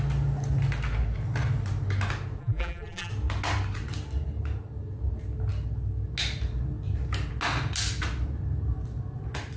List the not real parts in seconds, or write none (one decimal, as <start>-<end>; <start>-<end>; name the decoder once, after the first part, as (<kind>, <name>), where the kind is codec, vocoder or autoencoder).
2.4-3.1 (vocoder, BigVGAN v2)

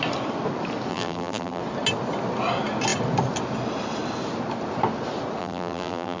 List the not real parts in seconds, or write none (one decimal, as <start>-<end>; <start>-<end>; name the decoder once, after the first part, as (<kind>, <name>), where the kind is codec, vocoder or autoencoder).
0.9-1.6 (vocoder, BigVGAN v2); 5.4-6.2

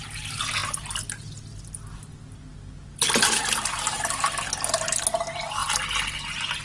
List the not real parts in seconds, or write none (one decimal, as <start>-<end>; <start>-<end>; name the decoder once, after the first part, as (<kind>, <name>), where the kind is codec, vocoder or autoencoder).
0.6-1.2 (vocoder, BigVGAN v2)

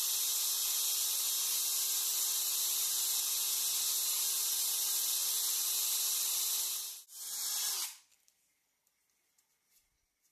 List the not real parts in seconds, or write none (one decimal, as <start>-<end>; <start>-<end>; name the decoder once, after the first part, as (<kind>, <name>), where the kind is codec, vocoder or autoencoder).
none

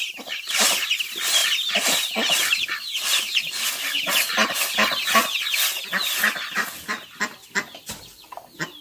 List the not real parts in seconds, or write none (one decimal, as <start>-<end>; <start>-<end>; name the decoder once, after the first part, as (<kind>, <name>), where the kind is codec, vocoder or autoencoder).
0.0-5.2 (vocoder, BigVGAN v2); 8.0-8.8

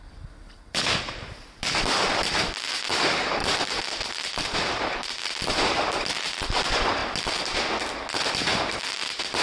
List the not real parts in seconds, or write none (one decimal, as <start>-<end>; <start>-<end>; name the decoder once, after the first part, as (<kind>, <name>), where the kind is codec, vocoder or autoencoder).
0.0-3.4 (vocoder, BigVGAN v2); 4.1-7.0; 8.8-9.4